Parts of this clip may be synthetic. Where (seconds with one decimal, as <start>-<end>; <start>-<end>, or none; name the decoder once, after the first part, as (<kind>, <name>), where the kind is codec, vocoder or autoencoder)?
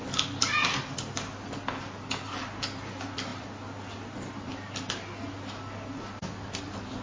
none